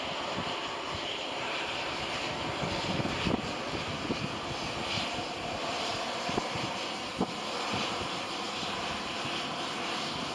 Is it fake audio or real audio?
real